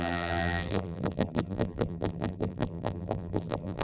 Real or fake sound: fake